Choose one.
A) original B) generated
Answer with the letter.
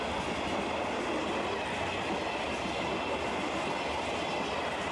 A